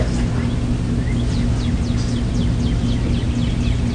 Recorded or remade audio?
recorded